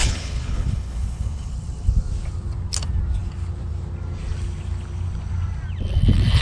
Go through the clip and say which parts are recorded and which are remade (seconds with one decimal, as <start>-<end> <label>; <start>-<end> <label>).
0.0-1.5 remade; 1.5-6.4 recorded